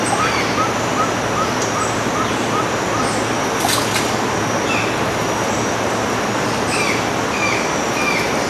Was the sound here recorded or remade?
recorded